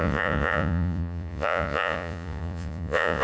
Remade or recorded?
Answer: remade